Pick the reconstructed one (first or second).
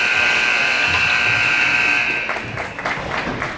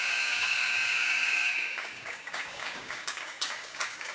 second